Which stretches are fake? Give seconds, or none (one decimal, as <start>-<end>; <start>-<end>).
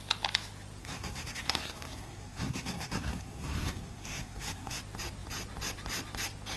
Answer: 0.8-4.8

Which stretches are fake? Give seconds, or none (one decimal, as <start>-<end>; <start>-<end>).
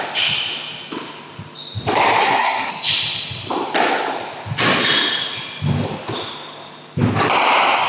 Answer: 2.2-2.7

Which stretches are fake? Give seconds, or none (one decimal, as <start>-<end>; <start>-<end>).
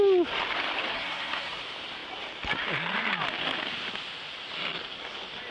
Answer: 0.9-1.6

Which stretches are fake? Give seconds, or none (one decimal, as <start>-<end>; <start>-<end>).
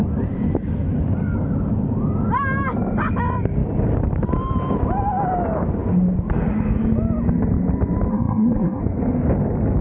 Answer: 8.1-8.8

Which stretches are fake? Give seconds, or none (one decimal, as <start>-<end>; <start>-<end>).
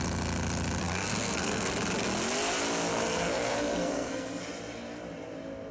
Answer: 0.8-1.7; 2.9-4.4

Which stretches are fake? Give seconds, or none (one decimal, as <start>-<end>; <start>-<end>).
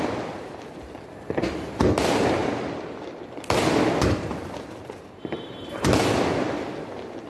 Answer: none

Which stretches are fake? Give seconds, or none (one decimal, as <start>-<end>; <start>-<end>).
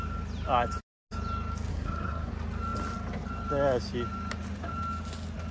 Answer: 1.7-2.3